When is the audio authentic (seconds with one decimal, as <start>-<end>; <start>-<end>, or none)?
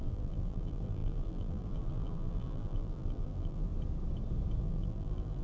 3.7-4.6